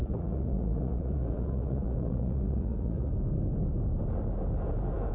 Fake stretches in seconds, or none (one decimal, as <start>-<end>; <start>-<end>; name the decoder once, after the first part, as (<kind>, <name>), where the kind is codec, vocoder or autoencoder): 0.0-3.1 (vocoder, Vocos)